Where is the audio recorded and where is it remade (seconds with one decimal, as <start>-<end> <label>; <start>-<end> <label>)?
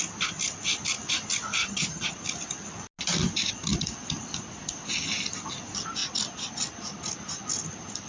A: 0.0-1.6 recorded; 1.6-2.1 remade; 2.1-8.1 recorded